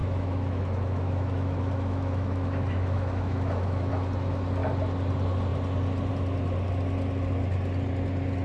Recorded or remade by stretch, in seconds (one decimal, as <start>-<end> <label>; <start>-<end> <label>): 0.0-3.9 remade; 3.9-8.4 recorded